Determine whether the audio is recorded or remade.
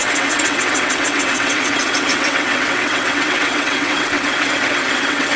remade